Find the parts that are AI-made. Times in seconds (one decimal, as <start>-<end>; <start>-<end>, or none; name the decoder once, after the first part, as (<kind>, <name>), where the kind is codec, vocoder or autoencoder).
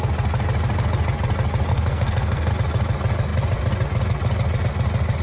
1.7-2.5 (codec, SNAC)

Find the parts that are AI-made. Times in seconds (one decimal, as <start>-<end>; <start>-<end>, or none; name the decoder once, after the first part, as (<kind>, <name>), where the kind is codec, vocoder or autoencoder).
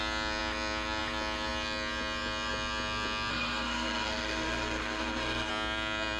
3.3-5.5 (codec, SNAC)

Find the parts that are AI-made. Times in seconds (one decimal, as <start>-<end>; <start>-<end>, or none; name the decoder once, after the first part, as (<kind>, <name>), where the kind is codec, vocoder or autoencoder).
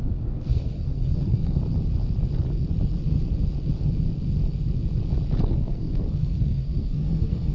0.0-1.6 (codec, SNAC); 5.4-7.5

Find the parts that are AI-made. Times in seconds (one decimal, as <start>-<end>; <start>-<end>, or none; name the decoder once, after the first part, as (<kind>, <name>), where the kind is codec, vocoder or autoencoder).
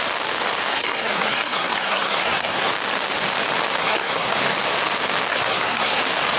0.7-2.7 (codec, SNAC); 3.8-4.4; 5.3-6.0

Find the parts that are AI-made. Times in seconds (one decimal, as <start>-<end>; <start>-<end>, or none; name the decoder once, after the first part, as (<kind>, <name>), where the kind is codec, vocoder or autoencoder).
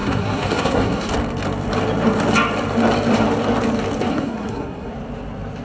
0.0-1.1 (codec, SNAC); 4.1-4.9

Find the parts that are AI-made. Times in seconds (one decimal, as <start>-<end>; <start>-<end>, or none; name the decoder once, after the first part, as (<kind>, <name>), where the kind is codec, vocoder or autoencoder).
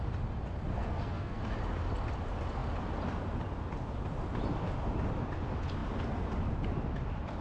0.7-1.4 (codec, SNAC)